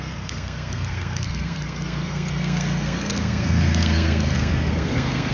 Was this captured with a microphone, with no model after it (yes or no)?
no